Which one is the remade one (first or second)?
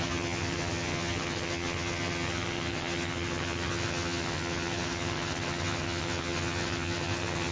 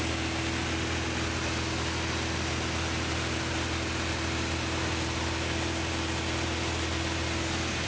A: first